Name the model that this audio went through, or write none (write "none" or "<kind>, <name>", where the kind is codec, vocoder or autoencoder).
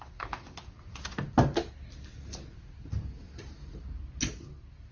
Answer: none